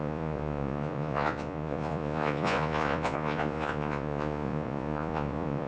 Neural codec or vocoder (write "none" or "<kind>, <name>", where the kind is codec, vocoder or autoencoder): vocoder, Vocos